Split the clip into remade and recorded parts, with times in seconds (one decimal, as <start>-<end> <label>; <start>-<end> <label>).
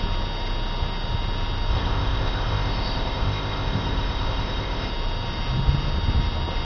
0.0-1.7 recorded; 1.7-4.9 remade; 4.9-6.6 recorded